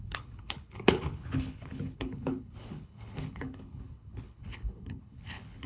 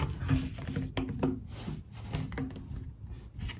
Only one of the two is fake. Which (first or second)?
first